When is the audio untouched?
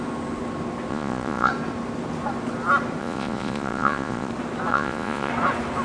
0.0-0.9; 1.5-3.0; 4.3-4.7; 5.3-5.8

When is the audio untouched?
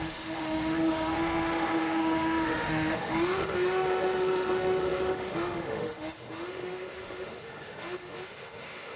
none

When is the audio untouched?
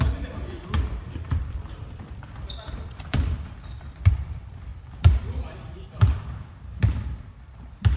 none